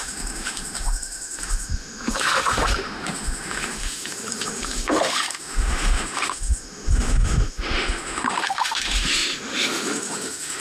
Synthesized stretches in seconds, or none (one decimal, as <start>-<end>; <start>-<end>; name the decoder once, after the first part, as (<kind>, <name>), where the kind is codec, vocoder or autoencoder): 0.0-10.6 (autoencoder, DAC-VAE)